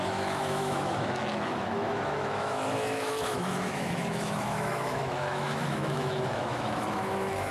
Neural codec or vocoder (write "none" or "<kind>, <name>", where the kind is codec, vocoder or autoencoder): autoencoder, DAC-VAE